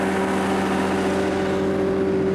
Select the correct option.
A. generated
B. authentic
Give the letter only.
B